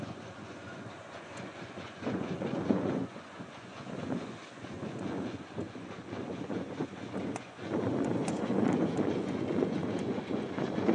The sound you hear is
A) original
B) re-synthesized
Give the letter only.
B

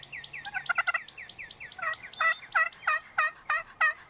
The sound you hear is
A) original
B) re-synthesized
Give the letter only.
A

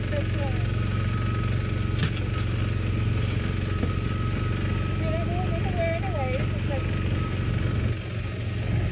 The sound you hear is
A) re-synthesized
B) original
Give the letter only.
B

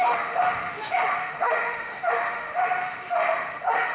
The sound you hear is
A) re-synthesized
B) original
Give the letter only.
A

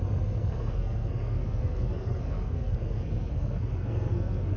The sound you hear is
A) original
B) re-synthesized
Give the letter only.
B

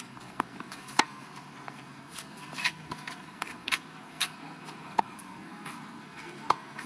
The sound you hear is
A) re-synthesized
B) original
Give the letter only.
A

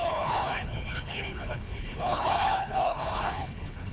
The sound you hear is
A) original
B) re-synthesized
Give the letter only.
B